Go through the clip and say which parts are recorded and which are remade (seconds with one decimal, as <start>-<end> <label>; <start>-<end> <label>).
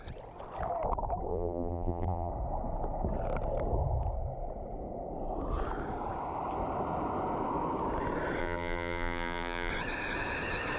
0.0-1.3 recorded; 1.3-2.3 remade; 2.3-8.4 recorded; 8.4-9.7 remade; 9.7-10.8 recorded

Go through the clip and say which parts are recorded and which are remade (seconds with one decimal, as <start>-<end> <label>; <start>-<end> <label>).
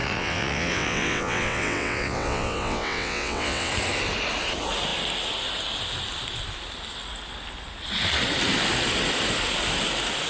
0.0-3.7 remade; 3.7-10.3 recorded